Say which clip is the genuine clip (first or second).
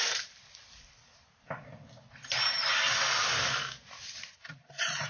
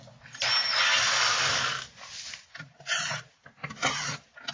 second